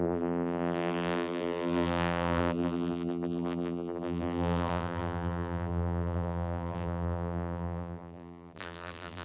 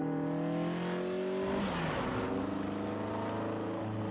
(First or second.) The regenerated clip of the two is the first